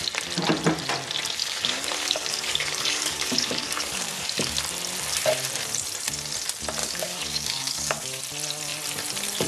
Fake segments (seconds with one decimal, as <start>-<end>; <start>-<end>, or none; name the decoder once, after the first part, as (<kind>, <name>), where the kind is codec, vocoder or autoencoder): 1.4-4.6 (codec, DAC); 6.8-8.2